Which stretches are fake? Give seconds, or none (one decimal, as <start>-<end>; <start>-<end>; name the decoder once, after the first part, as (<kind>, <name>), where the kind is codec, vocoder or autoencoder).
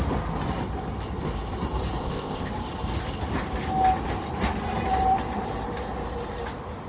2.0-2.5 (codec, ZipCodec)